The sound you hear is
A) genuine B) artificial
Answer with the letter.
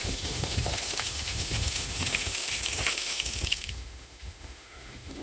B